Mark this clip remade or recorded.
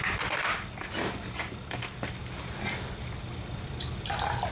recorded